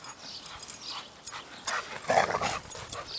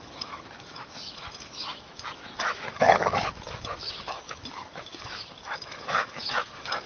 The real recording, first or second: first